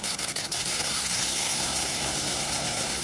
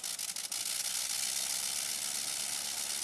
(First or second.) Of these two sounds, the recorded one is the second